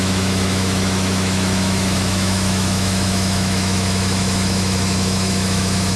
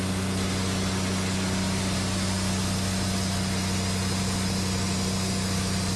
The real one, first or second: second